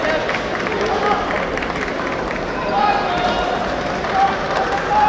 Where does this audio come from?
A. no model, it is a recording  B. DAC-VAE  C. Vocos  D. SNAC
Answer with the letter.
A